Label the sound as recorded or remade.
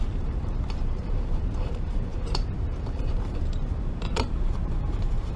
remade